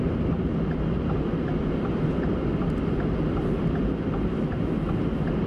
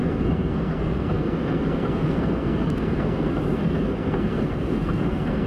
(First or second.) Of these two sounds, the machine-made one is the second